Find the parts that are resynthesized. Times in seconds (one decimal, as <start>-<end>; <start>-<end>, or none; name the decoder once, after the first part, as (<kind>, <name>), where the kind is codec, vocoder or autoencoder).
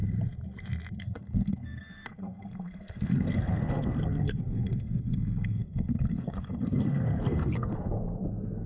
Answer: 1.0-8.7 (codec, SNAC)